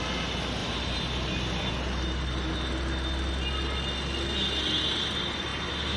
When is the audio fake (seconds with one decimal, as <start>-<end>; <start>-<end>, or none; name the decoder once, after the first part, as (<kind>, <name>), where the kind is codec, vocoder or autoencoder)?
0.6-1.7 (vocoder, BigVGAN v2)